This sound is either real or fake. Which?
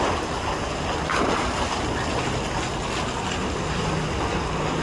real